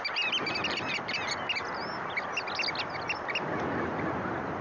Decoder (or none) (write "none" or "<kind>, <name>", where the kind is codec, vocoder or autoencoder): none